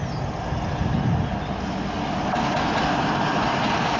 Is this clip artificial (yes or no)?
no